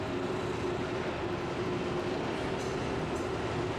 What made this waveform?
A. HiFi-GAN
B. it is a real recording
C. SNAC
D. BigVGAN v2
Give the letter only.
B